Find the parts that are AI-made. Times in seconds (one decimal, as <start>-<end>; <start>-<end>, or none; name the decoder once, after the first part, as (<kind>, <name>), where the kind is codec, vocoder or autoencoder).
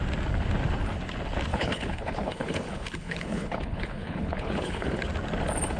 1.5-5.0 (codec, HILCodec)